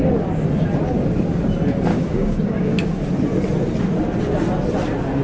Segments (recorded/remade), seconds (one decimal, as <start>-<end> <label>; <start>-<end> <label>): 0.0-1.9 recorded; 1.9-3.0 remade; 3.0-5.2 recorded